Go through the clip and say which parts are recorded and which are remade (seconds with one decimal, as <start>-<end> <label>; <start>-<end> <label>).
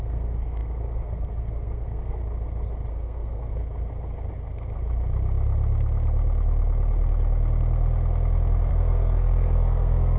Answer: 0.0-2.2 remade; 2.2-2.9 recorded; 2.9-3.6 remade; 3.6-8.7 recorded; 8.7-10.2 remade